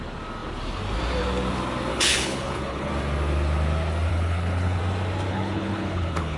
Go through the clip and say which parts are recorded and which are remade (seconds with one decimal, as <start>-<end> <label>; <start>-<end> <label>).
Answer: 0.0-1.9 recorded; 1.9-2.9 remade; 2.9-4.1 recorded; 4.1-4.8 remade; 4.8-5.3 recorded; 5.3-6.4 remade